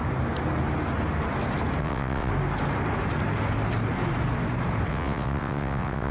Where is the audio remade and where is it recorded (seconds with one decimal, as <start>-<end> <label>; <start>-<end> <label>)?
0.0-1.8 recorded; 1.8-2.3 remade; 2.3-4.9 recorded; 4.9-6.1 remade